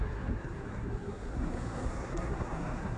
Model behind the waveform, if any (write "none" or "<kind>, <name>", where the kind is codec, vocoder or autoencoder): codec, SNAC